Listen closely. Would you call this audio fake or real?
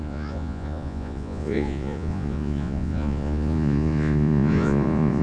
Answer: fake